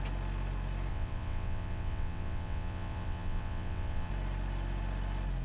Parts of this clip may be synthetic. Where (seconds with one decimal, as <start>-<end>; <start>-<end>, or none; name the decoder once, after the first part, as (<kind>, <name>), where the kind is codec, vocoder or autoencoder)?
0.9-4.1 (vocoder, WaveNeXt)